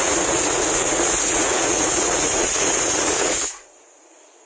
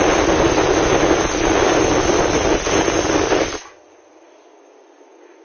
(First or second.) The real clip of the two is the second